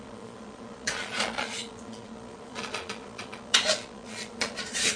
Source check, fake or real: fake